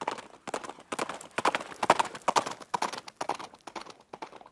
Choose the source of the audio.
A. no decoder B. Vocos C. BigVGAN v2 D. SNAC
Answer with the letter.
A